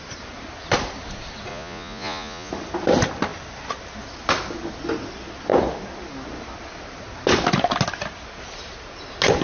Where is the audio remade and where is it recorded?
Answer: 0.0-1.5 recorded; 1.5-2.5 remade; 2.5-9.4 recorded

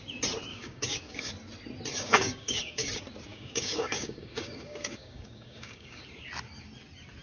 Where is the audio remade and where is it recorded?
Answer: 0.0-0.5 recorded; 0.5-1.3 remade; 1.3-1.9 recorded; 1.9-2.9 remade; 2.9-3.3 recorded; 3.3-6.0 remade; 6.0-7.2 recorded

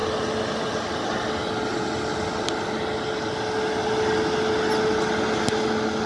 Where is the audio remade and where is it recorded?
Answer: 0.0-6.1 recorded

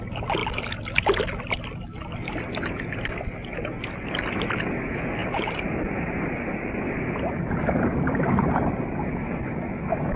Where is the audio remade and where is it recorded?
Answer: 0.0-5.2 recorded; 5.2-9.1 remade; 9.1-10.2 recorded

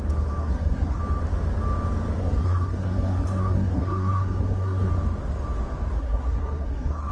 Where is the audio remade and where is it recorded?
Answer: 0.0-0.4 recorded; 0.4-1.0 remade; 1.0-2.2 recorded; 2.2-4.9 remade; 4.9-6.0 recorded; 6.0-7.1 remade

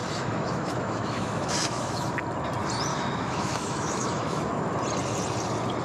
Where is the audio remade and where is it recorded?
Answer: 0.0-2.2 remade; 2.2-2.9 recorded; 2.9-4.6 remade; 4.6-5.8 recorded

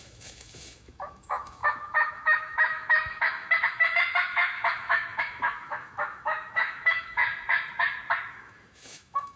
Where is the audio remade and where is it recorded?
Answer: 0.0-7.2 remade; 7.2-8.3 recorded; 8.3-9.4 remade